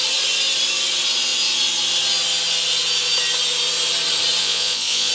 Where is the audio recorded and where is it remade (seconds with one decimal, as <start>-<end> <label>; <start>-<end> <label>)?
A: 0.0-4.4 recorded; 4.4-5.1 remade